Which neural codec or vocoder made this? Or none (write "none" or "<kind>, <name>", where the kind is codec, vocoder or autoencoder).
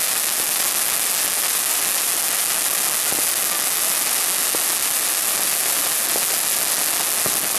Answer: none